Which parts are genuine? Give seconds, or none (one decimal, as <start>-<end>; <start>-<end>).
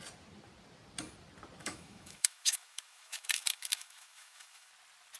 0.0-1.6; 4.7-5.2